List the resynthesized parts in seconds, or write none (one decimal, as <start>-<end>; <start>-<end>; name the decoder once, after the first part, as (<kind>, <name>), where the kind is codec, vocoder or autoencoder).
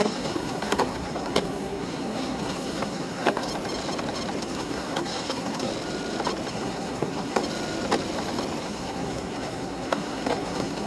0.0-3.5 (codec, SNAC); 4.4-5.7; 6.5-7.4; 8.6-10.9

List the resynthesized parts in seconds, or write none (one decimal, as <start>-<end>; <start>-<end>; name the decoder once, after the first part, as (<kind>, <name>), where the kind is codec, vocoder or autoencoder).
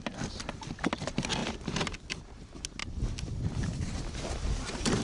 none